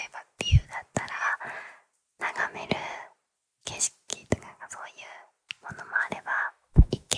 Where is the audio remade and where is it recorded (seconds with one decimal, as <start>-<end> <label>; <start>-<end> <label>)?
0.0-6.0 recorded; 6.0-7.2 remade

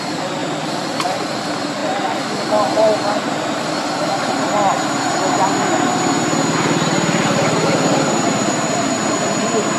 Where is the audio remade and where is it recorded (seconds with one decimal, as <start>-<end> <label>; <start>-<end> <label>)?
0.0-9.8 recorded

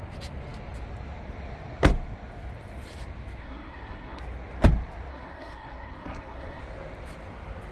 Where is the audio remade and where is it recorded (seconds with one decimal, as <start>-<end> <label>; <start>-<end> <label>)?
0.0-3.4 recorded; 3.4-4.2 remade; 4.2-5.1 recorded; 5.1-6.6 remade; 6.6-7.7 recorded